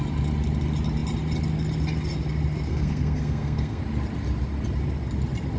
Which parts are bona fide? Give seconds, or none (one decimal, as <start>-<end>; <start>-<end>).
0.0-2.7; 3.8-5.6

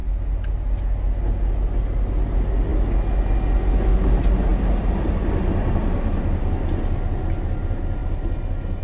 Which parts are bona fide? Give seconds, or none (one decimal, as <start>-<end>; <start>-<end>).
0.0-8.8